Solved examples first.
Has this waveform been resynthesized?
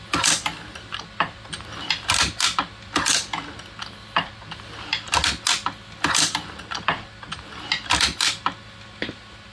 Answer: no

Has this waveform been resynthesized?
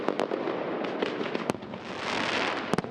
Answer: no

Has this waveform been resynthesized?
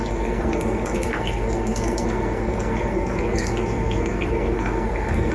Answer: yes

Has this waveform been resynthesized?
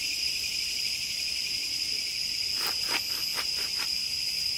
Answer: no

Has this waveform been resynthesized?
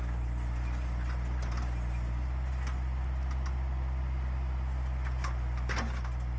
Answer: no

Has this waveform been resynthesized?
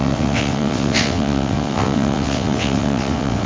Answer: yes